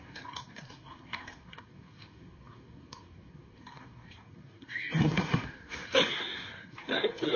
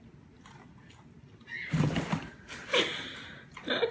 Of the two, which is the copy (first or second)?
first